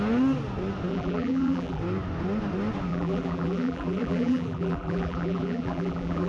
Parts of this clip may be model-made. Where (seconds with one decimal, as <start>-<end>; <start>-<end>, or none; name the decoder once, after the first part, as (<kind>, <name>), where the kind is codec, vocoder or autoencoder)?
0.9-1.8 (vocoder, BigVGAN v2); 2.9-6.3